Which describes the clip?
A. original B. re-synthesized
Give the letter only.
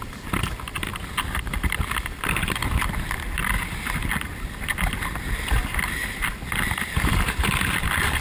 A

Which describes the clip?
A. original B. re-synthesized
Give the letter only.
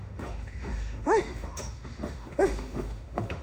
B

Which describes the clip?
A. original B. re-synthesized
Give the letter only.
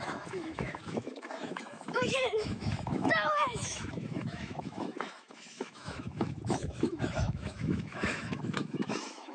B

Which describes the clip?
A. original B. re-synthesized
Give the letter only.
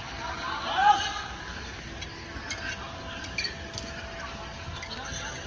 A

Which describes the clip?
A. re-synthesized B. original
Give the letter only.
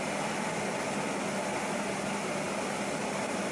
B